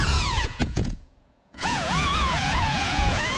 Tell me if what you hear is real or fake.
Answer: fake